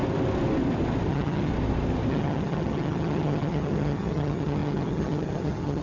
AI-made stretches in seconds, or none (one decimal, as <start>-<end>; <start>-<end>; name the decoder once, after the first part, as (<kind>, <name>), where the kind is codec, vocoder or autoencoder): 1.1-1.5 (vocoder, HiFi-GAN); 2.1-5.8